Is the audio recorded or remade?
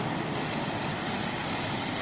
recorded